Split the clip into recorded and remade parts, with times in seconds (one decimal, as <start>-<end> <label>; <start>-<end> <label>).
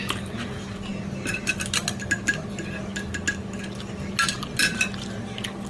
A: 0.0-5.7 recorded